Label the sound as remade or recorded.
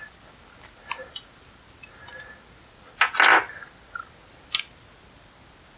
recorded